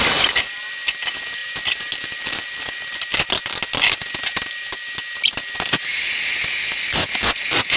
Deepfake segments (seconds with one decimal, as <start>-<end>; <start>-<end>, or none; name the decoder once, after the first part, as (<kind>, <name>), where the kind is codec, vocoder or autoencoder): 1.4-3.3 (vocoder, BigVGAN v2)

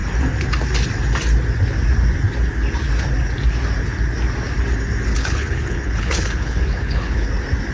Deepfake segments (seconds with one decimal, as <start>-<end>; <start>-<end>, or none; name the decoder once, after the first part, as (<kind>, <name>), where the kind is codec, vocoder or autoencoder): 5.1-7.3 (codec, HILCodec)

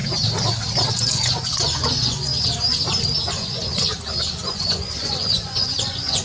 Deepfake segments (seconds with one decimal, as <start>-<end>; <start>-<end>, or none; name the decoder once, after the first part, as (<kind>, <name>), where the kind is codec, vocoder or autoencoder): 0.9-2.3 (vocoder, Vocos); 3.3-3.9; 4.5-6.2